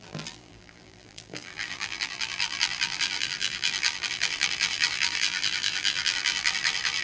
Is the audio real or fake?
fake